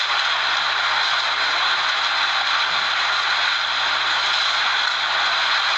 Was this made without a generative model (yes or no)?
yes